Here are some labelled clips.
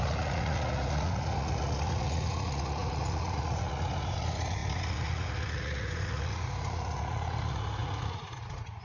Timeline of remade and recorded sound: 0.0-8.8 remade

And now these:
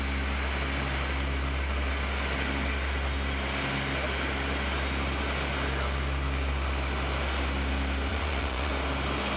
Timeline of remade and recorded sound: 0.0-8.1 recorded; 8.1-8.7 remade; 8.7-9.4 recorded

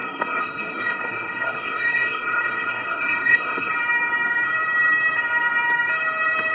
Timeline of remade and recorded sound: 0.0-3.7 remade; 3.7-6.5 recorded

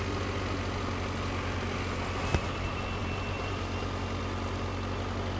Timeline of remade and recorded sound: 0.0-5.4 recorded

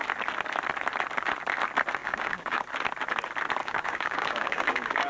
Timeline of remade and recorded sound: 0.0-2.0 recorded; 2.0-2.6 remade; 2.6-3.6 recorded; 3.6-5.1 remade